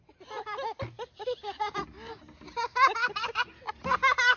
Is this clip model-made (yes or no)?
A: no